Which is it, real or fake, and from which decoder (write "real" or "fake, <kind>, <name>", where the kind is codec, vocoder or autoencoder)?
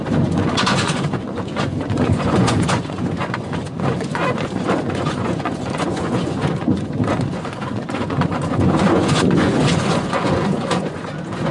fake, vocoder, Vocos